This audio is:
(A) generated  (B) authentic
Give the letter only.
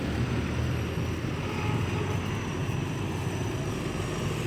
B